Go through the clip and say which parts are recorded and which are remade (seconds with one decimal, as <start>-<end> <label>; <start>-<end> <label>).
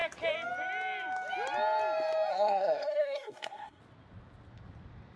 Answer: 0.0-2.3 recorded; 2.3-3.8 remade; 3.8-5.2 recorded